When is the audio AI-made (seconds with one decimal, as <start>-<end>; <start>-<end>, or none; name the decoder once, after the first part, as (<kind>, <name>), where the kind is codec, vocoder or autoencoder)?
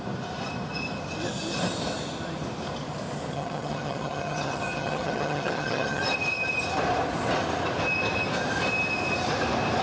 3.3-6.0 (vocoder, HiFi-GAN)